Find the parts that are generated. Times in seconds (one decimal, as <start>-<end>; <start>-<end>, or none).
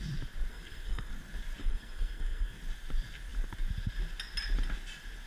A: 0.5-1.1; 1.6-2.6